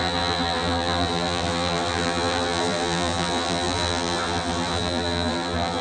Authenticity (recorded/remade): remade